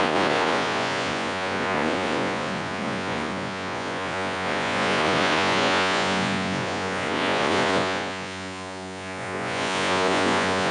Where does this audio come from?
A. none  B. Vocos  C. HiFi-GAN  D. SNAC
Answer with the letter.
B